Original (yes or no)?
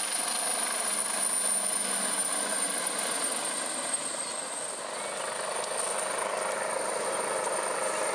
yes